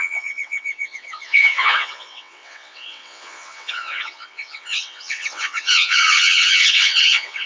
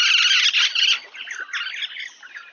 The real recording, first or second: second